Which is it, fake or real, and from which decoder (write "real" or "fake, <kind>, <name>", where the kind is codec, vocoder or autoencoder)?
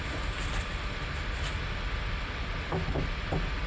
real